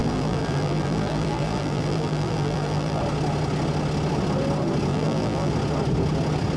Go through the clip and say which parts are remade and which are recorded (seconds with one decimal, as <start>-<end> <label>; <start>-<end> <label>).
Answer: 0.0-3.0 remade; 3.0-4.9 recorded; 4.9-5.5 remade; 5.5-6.6 recorded